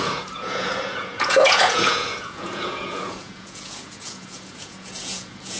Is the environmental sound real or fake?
fake